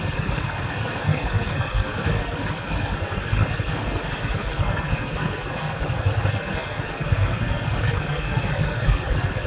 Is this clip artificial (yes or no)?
yes